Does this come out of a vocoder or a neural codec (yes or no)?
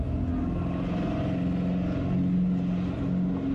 no